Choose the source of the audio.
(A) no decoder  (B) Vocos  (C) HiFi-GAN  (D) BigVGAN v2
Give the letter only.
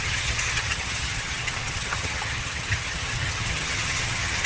C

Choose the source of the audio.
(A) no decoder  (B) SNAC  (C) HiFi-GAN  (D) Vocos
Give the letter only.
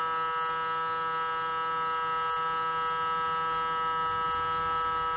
A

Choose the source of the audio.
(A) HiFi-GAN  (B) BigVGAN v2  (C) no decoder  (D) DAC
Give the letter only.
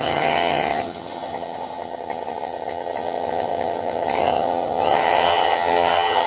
A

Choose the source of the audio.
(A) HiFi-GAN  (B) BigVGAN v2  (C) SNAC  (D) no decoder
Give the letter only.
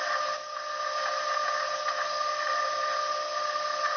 D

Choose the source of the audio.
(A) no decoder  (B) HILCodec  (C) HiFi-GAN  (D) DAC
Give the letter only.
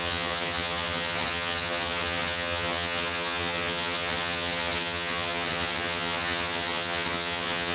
C